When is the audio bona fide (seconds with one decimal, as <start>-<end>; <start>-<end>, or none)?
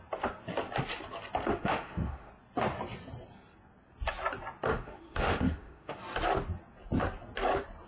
0.0-1.5; 2.3-4.7; 6.0-7.9